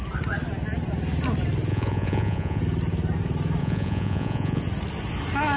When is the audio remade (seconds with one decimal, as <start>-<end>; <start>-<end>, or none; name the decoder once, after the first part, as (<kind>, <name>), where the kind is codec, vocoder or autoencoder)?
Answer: 1.7-2.6 (vocoder, Vocos); 3.6-4.6

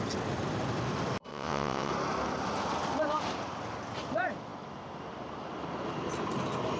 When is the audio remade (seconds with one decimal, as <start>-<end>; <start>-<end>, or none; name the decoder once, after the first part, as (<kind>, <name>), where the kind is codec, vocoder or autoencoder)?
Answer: 1.3-1.9 (vocoder, WaveNeXt)

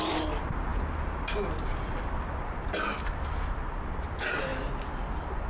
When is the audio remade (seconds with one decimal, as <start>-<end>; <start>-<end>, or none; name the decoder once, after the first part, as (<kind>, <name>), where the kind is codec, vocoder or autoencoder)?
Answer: none

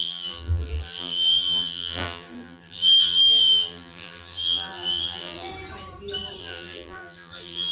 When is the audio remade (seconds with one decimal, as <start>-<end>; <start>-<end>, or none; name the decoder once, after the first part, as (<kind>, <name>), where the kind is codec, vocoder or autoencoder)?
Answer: 0.0-5.5 (vocoder, BigVGAN v2); 6.4-7.7

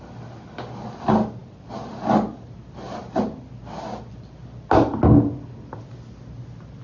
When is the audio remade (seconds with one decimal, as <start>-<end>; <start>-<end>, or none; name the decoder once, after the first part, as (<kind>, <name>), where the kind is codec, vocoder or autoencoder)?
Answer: none

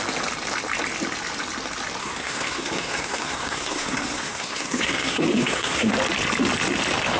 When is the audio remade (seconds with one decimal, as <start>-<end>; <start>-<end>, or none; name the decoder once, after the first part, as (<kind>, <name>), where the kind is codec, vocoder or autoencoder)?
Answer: 2.0-5.9 (codec, SNAC)

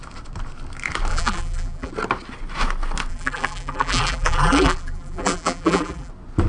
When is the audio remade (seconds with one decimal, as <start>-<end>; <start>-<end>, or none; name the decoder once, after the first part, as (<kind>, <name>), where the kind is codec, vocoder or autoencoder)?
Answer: 1.1-1.9 (vocoder, BigVGAN v2); 3.1-6.1

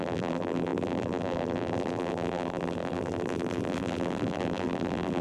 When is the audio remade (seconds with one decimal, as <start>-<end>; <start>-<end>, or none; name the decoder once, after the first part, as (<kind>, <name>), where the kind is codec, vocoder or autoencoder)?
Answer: 0.0-5.2 (vocoder, BigVGAN v2)